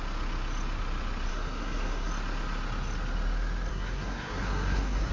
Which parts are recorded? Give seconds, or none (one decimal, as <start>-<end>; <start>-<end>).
0.0-1.3; 2.1-3.7